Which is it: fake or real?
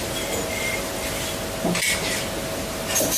real